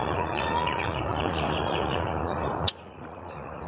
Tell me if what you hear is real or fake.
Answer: fake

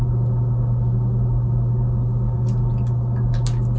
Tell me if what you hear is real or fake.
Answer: real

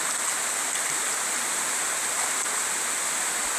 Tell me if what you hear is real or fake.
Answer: real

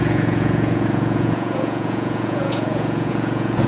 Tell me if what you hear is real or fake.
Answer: fake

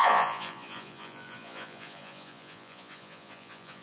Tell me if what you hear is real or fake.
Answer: fake